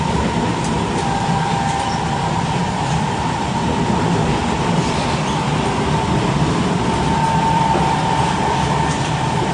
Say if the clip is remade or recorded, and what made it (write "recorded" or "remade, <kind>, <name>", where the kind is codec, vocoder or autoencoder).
remade, vocoder, BigVGAN v2